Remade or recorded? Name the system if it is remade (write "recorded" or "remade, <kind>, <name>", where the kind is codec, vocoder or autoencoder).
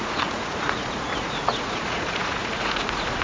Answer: remade, vocoder, Vocos